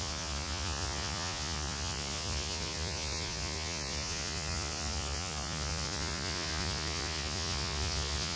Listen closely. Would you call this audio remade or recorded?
remade